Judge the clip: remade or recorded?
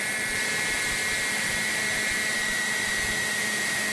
remade